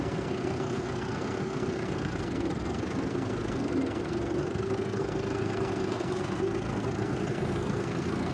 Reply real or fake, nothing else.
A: fake